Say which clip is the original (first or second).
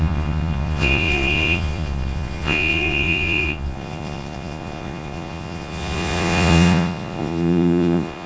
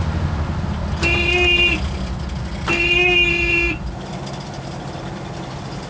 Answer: second